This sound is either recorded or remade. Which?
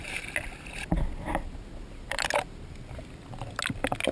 recorded